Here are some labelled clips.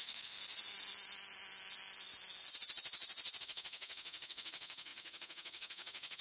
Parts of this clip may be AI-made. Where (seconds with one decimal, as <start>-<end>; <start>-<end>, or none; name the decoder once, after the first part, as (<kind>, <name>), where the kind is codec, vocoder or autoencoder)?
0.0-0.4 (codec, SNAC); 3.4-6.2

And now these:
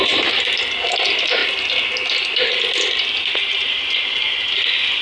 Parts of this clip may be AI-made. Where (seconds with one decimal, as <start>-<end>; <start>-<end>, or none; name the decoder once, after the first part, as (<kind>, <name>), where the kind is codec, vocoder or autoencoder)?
none

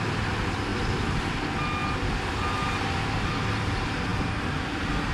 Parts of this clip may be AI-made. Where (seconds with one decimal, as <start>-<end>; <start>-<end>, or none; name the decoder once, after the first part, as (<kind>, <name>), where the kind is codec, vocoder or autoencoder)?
none

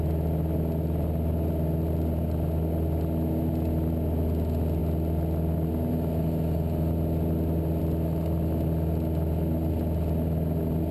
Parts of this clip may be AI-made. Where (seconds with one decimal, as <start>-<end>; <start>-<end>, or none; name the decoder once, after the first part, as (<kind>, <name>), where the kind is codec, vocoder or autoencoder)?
none

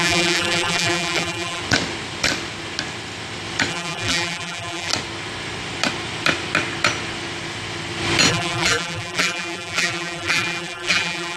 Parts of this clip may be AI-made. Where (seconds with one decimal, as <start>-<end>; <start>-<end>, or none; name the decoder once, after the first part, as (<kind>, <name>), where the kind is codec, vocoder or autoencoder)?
0.0-1.6 (vocoder, BigVGAN v2); 3.7-4.9; 8.3-11.4

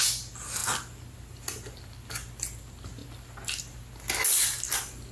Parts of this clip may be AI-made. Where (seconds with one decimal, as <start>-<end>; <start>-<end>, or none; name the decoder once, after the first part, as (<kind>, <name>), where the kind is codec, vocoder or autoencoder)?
none

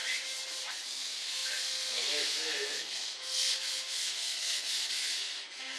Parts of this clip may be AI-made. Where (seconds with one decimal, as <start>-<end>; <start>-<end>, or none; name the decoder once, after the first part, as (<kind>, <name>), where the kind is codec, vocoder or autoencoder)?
0.7-5.8 (codec, SNAC)

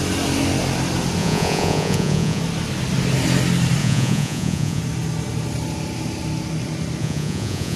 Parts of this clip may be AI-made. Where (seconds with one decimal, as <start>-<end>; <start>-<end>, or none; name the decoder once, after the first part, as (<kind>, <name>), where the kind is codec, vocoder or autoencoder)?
1.2-2.4 (vocoder, Vocos); 3.8-4.8; 7.0-7.8